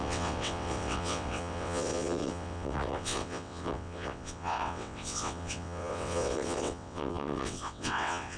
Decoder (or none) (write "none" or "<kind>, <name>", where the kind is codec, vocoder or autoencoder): vocoder, WaveNeXt